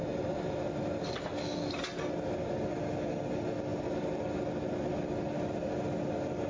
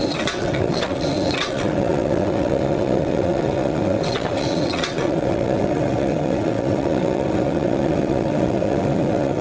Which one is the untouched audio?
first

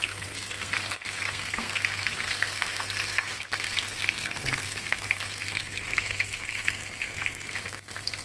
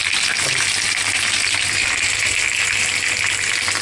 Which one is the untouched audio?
second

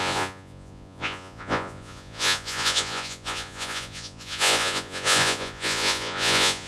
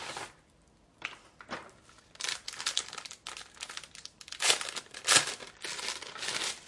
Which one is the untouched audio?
second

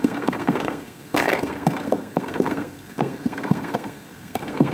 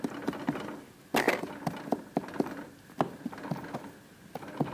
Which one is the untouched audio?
second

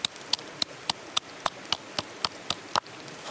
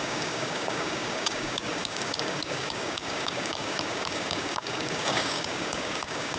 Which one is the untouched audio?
first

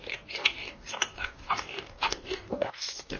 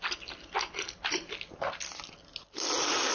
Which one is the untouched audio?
second